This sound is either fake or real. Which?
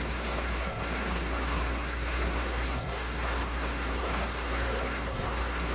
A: fake